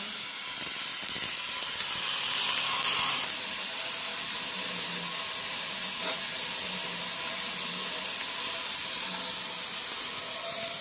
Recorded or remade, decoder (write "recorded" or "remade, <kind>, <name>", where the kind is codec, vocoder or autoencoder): recorded